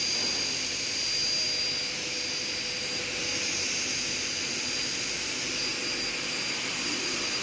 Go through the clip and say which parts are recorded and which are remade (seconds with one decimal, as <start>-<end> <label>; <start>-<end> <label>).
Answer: 0.0-3.2 recorded; 3.2-3.9 remade; 3.9-7.4 recorded